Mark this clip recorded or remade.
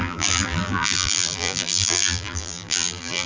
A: remade